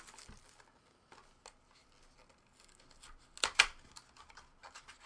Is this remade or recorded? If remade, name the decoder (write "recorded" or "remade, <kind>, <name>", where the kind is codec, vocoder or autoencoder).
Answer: recorded